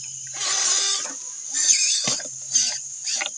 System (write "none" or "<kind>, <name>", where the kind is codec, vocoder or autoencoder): none